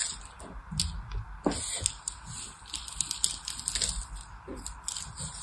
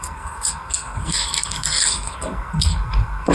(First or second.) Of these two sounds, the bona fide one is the first